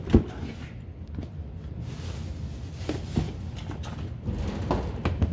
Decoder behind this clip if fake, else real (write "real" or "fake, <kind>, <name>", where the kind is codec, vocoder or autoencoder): real